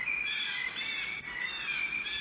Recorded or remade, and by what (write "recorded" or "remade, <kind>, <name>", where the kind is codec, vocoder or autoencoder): recorded